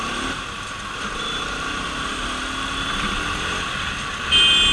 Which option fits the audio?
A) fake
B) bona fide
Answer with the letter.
B